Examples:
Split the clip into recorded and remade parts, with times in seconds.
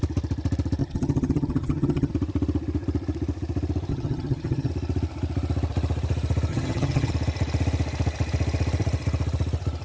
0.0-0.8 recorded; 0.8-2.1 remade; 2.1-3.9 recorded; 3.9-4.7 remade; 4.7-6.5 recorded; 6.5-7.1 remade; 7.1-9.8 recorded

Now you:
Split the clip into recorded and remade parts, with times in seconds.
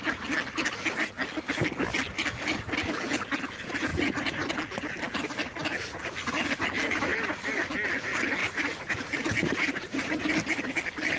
0.0-3.9 recorded; 3.9-4.5 remade; 4.5-8.4 recorded; 8.4-10.3 remade; 10.3-11.2 recorded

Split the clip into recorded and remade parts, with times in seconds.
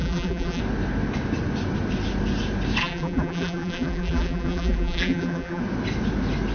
0.0-0.6 remade; 0.6-2.8 recorded; 2.8-5.6 remade; 5.6-6.5 recorded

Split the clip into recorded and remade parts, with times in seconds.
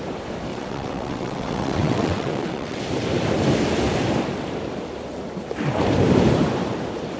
0.0-0.5 recorded; 0.5-2.8 remade; 2.8-7.2 recorded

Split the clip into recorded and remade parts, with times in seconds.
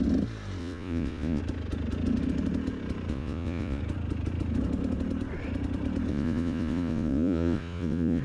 0.0-0.6 recorded; 0.6-1.4 remade; 1.4-3.1 recorded; 3.1-3.8 remade; 3.8-6.1 recorded; 6.1-8.2 remade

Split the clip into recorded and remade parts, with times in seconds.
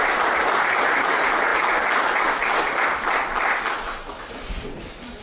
0.0-5.2 recorded